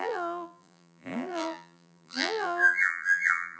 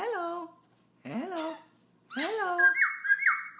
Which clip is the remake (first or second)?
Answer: first